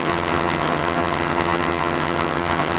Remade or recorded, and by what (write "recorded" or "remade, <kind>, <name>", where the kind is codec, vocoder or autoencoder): remade, vocoder, HiFi-GAN